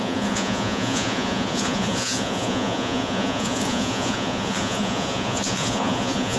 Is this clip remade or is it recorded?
remade